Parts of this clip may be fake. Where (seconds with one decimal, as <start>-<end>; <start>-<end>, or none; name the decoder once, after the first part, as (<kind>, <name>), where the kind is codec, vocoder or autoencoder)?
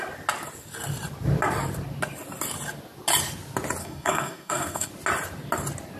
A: 3.8-4.9 (codec, SNAC)